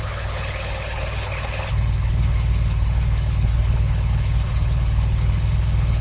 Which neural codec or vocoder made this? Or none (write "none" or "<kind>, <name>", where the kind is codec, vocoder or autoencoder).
codec, HILCodec